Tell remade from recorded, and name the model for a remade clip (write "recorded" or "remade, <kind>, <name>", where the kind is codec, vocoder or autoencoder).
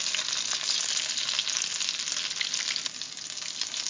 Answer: recorded